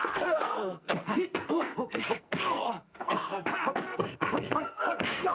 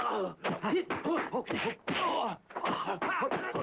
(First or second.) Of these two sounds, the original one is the second